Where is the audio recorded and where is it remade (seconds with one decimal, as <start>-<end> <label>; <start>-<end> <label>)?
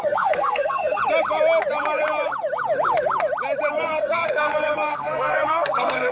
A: 0.0-1.0 remade; 1.0-3.7 recorded; 3.7-6.1 remade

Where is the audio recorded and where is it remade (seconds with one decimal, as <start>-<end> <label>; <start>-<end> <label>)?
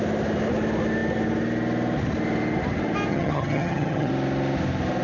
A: 0.0-3.1 recorded; 3.1-4.1 remade; 4.1-5.0 recorded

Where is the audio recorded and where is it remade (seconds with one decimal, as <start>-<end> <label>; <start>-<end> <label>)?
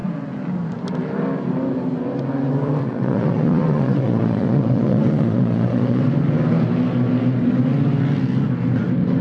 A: 0.0-2.8 recorded; 2.8-6.0 remade; 6.0-9.2 recorded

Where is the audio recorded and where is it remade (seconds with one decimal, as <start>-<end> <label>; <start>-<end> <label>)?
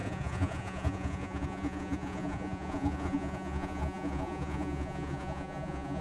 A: 0.0-6.0 remade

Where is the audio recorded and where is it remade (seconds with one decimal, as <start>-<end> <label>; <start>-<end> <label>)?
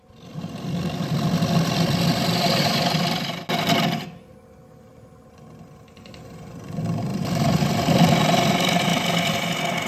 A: 0.0-7.1 recorded; 7.1-8.5 remade; 8.5-9.9 recorded